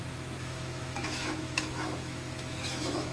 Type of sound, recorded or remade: remade